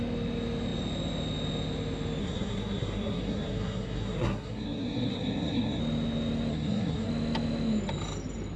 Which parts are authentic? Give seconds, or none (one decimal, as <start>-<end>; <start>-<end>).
0.0-2.2; 5.8-6.5; 7.1-8.6